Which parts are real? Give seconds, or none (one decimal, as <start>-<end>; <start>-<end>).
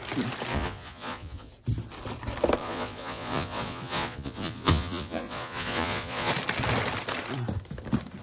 0.0-0.5; 1.5-2.6; 6.3-8.2